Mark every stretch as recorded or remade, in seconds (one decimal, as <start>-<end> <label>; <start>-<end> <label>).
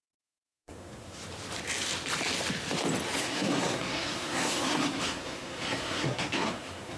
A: 0.0-1.2 remade; 1.2-3.2 recorded; 3.2-7.0 remade